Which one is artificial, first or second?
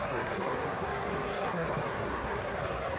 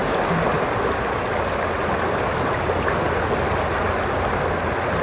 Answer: first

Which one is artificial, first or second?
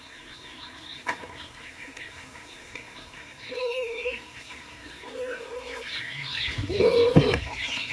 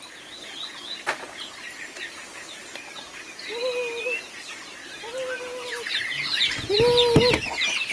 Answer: first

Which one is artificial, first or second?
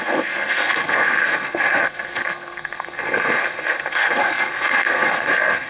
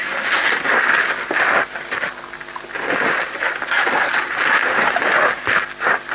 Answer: first